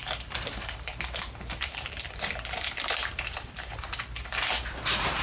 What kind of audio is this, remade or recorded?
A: remade